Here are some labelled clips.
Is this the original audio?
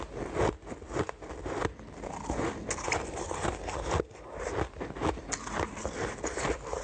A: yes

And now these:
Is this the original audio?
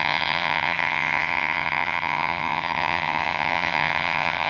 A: no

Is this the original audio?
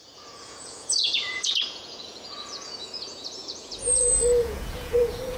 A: no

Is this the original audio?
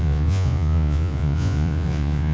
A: no